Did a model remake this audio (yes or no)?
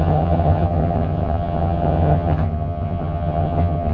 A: yes